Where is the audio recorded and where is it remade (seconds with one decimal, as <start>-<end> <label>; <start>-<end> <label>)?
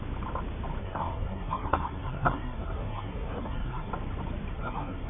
0.0-0.8 recorded; 0.8-3.9 remade; 3.9-4.5 recorded; 4.5-5.1 remade